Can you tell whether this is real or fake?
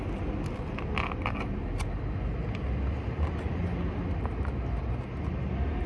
real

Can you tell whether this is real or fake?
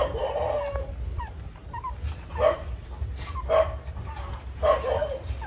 real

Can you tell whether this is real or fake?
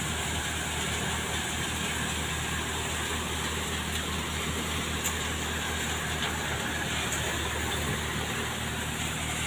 real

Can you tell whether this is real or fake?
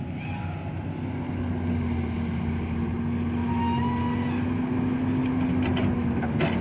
real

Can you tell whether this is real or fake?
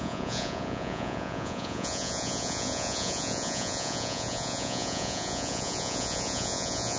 fake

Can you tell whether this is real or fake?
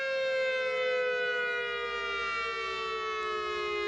real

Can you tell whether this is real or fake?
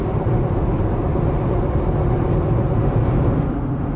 real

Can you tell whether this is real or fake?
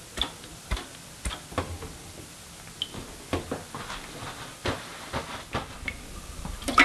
real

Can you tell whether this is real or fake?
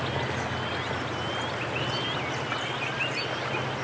real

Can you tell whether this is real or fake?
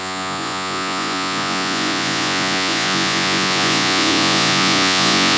fake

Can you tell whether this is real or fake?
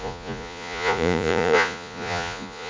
fake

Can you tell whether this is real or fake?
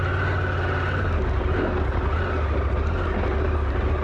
real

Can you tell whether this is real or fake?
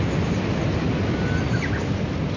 real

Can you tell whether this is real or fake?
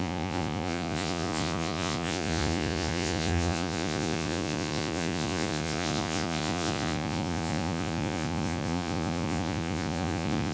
fake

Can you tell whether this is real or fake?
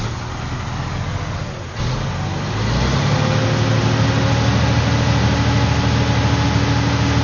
real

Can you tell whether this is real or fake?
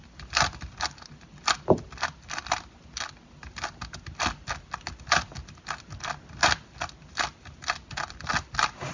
real